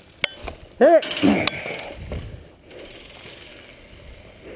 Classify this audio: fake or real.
real